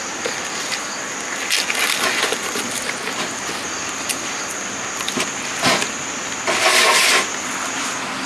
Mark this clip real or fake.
real